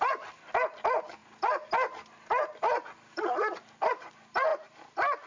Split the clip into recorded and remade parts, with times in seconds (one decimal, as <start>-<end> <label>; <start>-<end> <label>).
0.0-5.3 recorded